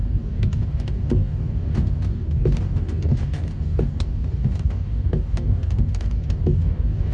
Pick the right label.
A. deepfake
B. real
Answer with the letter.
A